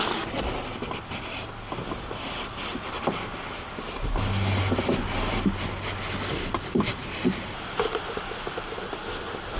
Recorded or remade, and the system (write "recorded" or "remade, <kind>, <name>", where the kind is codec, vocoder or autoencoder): recorded